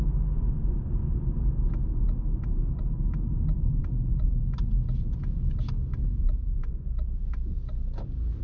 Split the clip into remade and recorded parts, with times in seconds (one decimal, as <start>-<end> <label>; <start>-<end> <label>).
0.0-8.4 recorded